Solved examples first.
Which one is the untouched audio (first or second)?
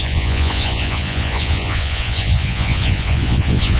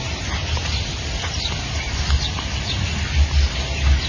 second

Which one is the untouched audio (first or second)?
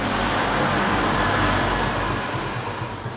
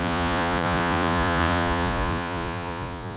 first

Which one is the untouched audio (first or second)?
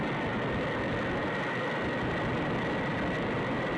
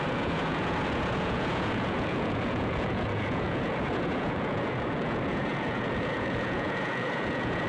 first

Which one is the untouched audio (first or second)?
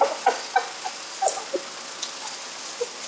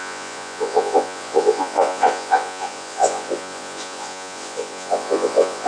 first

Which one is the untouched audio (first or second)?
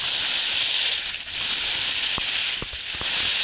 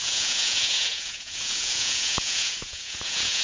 first